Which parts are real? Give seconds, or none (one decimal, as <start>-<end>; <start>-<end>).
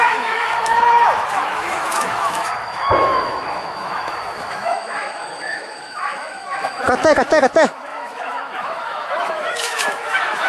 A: none